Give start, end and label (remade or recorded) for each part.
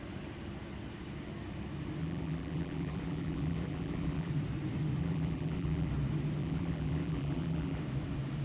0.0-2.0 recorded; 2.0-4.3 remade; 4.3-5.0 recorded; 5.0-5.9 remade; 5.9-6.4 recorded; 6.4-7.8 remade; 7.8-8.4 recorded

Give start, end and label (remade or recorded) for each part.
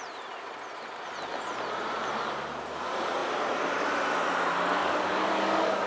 0.0-4.8 recorded; 4.8-5.9 remade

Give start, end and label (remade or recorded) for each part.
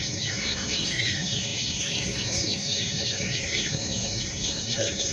0.0-5.1 remade